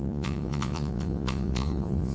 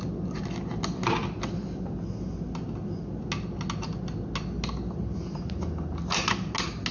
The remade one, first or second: first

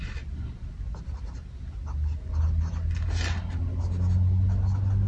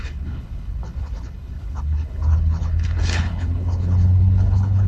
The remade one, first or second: second